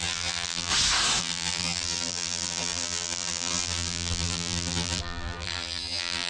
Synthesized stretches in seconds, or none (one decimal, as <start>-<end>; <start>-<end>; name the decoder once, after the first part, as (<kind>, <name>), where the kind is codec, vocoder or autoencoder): 0.0-0.7 (vocoder, BigVGAN v2); 1.2-6.3